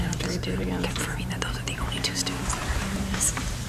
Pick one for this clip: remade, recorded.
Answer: remade